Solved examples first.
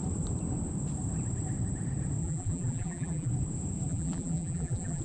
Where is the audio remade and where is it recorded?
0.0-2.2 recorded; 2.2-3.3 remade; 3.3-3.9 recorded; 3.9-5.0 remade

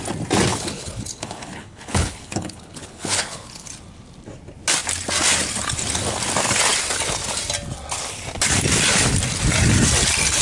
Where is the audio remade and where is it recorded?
0.0-0.5 recorded; 0.5-3.7 remade; 3.7-10.4 recorded

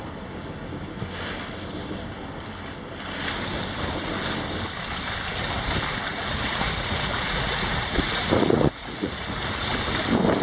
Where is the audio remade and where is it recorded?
0.0-6.1 recorded; 6.1-9.7 remade; 9.7-10.4 recorded